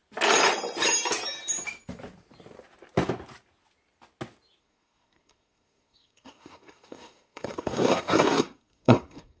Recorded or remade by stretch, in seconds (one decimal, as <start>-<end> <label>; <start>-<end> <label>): 0.0-4.6 recorded; 4.6-9.4 remade